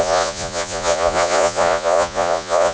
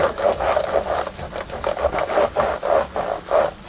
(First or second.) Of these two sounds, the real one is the second